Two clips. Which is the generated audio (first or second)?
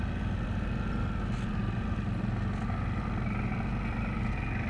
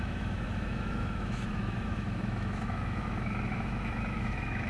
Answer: second